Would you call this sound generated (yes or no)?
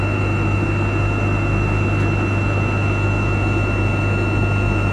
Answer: yes